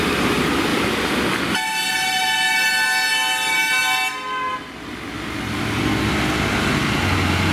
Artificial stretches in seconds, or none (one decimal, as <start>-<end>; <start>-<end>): none